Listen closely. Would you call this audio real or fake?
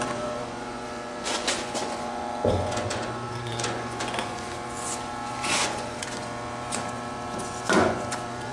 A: fake